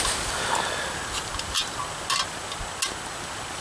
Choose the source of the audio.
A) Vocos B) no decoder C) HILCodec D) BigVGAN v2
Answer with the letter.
B